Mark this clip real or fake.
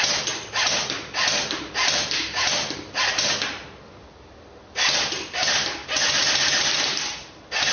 real